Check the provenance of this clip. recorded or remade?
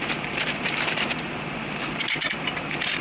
remade